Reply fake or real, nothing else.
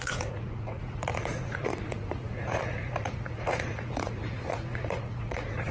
fake